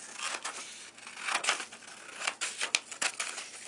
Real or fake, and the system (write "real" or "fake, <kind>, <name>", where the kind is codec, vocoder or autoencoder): real